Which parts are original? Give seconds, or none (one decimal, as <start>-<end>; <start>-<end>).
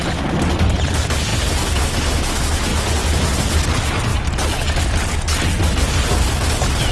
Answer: 0.0-6.9